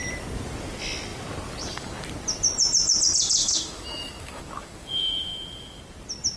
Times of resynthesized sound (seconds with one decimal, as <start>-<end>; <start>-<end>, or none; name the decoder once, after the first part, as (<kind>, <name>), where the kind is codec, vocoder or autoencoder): 3.4-5.8 (autoencoder, DAC-VAE)